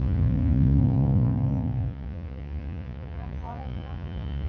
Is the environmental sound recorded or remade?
remade